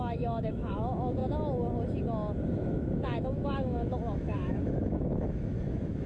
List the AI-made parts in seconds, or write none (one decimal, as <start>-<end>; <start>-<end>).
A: 0.0-1.2; 2.7-6.1

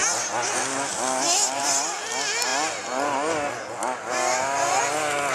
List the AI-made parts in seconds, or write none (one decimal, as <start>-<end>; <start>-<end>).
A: none

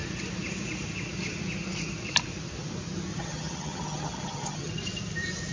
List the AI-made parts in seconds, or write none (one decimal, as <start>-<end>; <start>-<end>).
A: 3.1-4.7

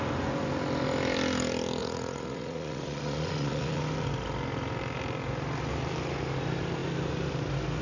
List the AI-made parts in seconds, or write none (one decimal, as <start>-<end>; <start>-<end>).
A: 1.8-3.8

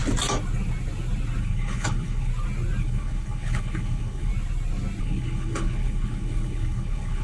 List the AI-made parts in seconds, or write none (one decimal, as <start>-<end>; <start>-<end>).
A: 1.4-2.3; 2.8-4.3; 5.0-7.2

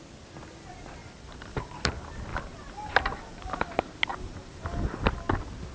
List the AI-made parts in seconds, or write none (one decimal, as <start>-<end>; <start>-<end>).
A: 1.0-1.9; 2.3-3.6; 4.1-5.0